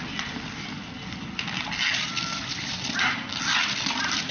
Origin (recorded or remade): recorded